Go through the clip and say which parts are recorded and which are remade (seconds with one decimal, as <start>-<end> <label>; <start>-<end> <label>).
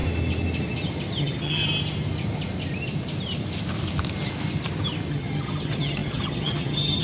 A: 0.0-1.2 recorded; 1.2-1.6 remade; 1.6-5.1 recorded; 5.1-7.0 remade